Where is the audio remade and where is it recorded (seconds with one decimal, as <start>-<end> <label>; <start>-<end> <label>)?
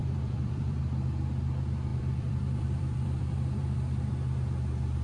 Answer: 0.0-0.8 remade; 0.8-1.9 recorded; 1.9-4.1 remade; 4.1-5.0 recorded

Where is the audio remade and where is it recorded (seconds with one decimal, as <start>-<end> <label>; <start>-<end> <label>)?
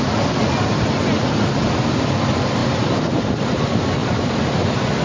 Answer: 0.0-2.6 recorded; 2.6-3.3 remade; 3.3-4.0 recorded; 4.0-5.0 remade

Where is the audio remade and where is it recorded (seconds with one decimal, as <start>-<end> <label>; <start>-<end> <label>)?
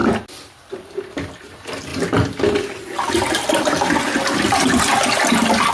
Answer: 0.0-5.7 recorded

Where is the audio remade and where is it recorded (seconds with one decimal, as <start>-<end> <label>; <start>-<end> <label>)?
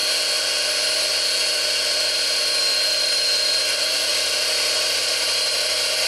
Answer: 0.0-3.6 recorded; 3.6-4.1 remade; 4.1-4.8 recorded; 4.8-6.1 remade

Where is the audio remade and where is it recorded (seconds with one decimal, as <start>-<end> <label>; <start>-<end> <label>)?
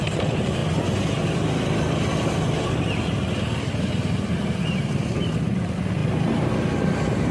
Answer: 0.0-0.6 remade; 0.6-3.7 recorded; 3.7-6.0 remade; 6.0-7.3 recorded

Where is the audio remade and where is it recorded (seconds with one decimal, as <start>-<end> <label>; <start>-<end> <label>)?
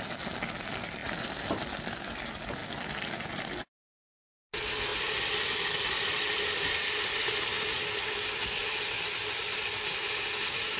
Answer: 0.0-1.0 recorded; 1.0-1.6 remade; 1.6-4.9 recorded; 4.9-6.9 remade; 6.9-8.6 recorded; 8.6-9.2 remade; 9.2-10.8 recorded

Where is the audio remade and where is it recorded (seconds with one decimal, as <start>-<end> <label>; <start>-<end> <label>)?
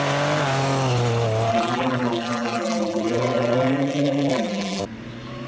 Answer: 0.0-1.5 recorded; 1.5-4.8 remade; 4.8-5.5 recorded